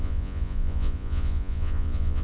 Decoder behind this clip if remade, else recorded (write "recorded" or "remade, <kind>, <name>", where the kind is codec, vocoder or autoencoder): remade, vocoder, Vocos